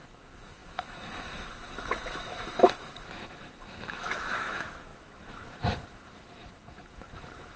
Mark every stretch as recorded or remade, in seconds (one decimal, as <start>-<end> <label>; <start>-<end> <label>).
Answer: 0.0-7.6 remade